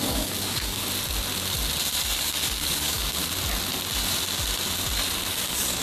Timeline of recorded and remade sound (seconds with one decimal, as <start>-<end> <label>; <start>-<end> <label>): 0.0-0.8 remade; 0.8-2.2 recorded; 2.2-3.2 remade; 3.2-5.3 recorded; 5.3-5.8 remade